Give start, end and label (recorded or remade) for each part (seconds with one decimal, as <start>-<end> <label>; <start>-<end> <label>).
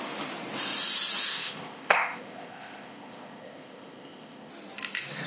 0.0-1.3 recorded; 1.3-4.5 remade; 4.5-5.3 recorded